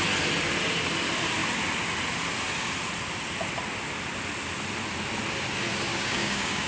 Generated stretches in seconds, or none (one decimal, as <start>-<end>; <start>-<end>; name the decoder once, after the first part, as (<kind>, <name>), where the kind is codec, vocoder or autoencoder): 5.9-6.7 (codec, DAC)